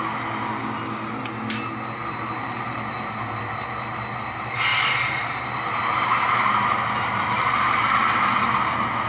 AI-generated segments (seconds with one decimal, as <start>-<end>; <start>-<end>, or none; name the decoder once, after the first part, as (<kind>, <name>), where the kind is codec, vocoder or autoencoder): 2.0-2.9 (vocoder, BigVGAN v2); 4.7-7.9